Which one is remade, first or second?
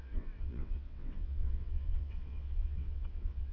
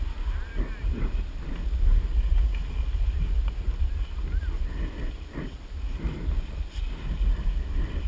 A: first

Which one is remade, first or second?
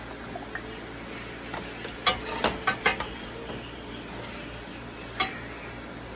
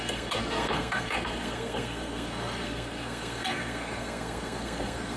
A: second